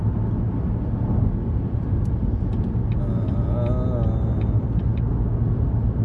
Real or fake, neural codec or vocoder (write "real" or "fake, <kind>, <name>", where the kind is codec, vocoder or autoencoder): real